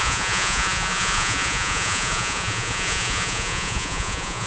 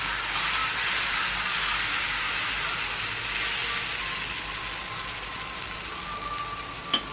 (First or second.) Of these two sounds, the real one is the second